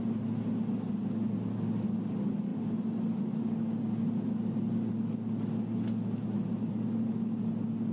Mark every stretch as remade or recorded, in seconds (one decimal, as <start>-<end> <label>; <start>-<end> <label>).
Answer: 0.0-7.9 recorded